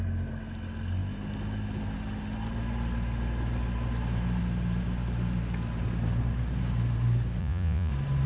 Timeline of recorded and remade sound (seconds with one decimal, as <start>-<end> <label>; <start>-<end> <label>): 0.0-7.4 recorded; 7.4-7.9 remade; 7.9-8.3 recorded